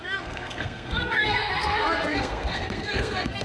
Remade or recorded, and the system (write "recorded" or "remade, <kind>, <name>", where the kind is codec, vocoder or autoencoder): remade, codec, SNAC